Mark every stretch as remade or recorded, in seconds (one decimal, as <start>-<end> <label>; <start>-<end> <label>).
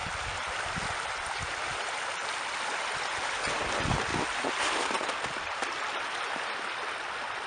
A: 0.0-7.5 recorded